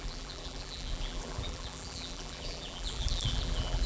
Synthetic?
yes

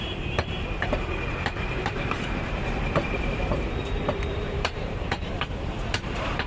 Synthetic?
yes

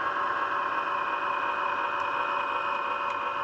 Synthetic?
no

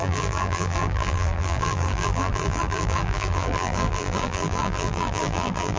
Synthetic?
yes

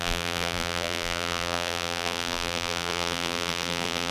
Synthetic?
yes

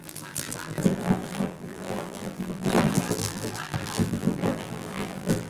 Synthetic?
yes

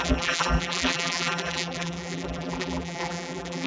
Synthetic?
yes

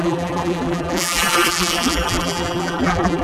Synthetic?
yes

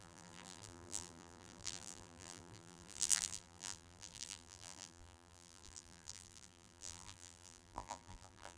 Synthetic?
yes